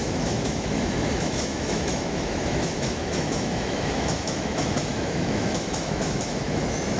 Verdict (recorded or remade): remade